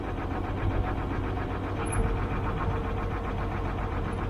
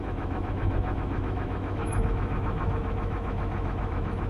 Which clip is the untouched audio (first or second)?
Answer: first